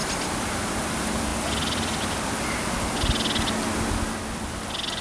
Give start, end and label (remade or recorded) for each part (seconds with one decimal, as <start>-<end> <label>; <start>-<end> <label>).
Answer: 0.0-0.9 recorded; 0.9-1.3 remade; 1.3-4.3 recorded; 4.3-5.0 remade